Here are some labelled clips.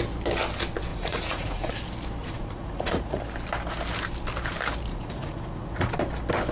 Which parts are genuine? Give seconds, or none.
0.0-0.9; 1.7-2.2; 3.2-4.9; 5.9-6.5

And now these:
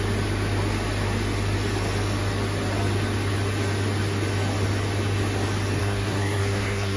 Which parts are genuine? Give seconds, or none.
0.0-5.8

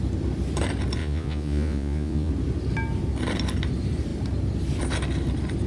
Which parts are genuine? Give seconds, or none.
0.0-1.0; 2.3-5.7

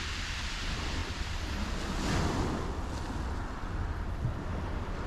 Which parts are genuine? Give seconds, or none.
0.0-5.1

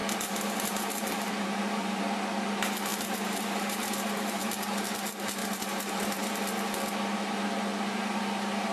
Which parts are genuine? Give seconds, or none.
2.0-2.9; 4.4-5.4; 6.6-8.7

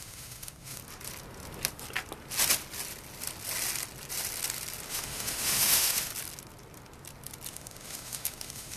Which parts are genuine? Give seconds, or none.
0.8-4.9; 6.1-7.5